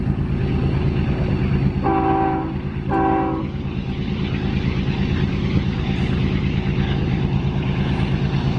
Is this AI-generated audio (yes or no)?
no